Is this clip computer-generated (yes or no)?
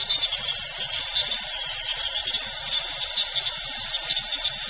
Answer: yes